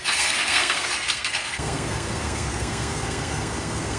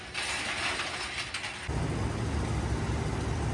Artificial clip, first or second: first